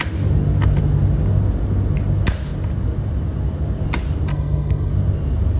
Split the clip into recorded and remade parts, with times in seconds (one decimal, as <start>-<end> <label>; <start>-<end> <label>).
0.0-4.3 recorded; 4.3-4.9 remade; 4.9-5.6 recorded